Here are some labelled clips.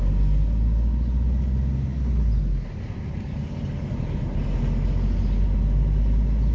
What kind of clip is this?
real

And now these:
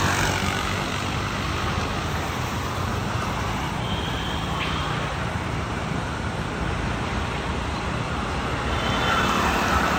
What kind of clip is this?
real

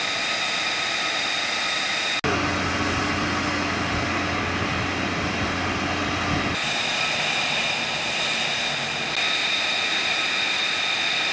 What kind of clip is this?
real